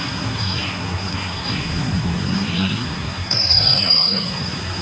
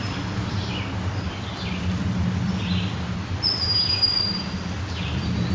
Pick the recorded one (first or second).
second